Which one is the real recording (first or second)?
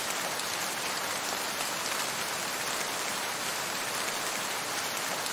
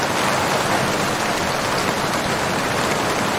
second